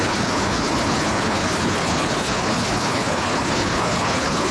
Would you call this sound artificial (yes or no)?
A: yes